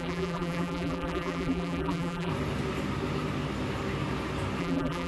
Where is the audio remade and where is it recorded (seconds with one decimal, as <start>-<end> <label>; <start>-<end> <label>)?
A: 0.0-2.3 remade; 2.3-4.6 recorded; 4.6-5.1 remade